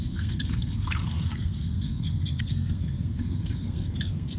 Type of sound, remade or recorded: remade